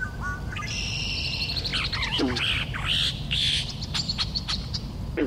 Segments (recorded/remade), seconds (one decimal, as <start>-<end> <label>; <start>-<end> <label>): 0.0-5.3 remade